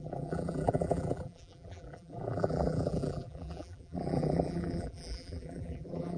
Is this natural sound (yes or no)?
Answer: no